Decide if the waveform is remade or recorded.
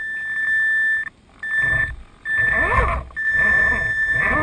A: recorded